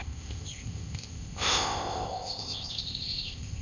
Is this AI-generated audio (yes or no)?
yes